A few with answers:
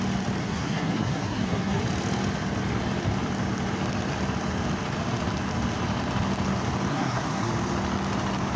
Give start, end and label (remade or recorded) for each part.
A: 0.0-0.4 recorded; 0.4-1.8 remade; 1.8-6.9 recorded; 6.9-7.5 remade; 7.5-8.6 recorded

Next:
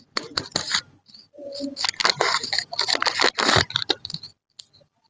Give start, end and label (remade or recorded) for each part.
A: 0.0-5.1 recorded

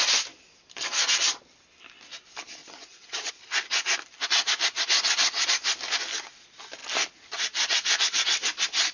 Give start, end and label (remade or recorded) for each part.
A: 0.0-2.6 recorded; 2.6-3.3 remade; 3.3-8.9 recorded

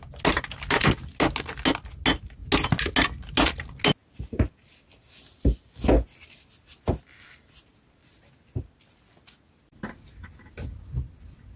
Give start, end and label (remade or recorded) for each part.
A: 0.0-11.6 recorded

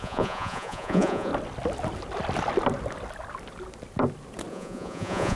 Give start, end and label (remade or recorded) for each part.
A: 0.0-1.3 remade; 1.3-4.5 recorded; 4.5-5.4 remade